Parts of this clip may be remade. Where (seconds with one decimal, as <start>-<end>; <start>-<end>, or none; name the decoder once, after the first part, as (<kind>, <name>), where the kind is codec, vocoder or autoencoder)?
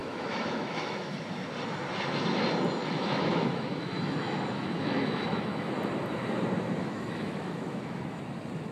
0.0-1.3 (autoencoder, DAC-VAE); 2.8-5.7; 6.8-8.2